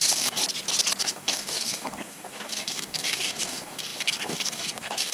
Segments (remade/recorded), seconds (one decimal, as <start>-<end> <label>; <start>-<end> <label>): 0.0-0.4 remade; 0.4-1.0 recorded; 1.0-5.1 remade